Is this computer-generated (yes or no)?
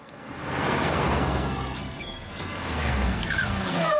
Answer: yes